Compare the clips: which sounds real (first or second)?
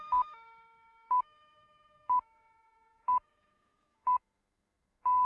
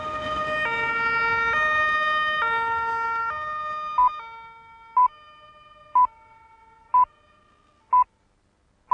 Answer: second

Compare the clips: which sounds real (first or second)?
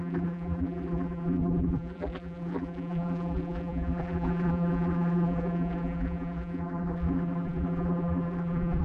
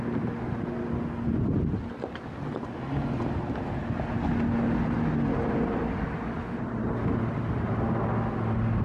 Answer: second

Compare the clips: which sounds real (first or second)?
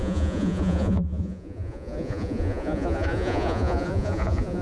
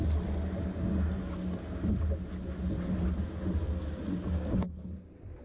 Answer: second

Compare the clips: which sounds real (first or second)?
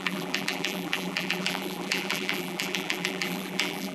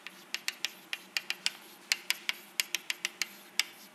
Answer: second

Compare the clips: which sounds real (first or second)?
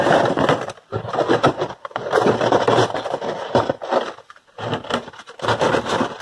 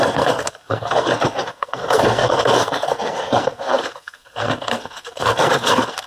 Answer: first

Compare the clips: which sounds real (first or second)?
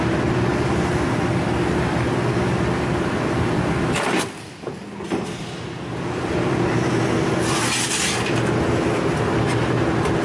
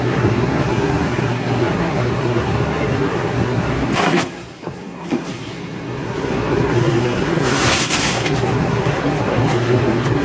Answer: first